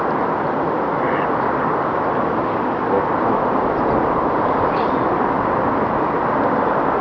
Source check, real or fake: real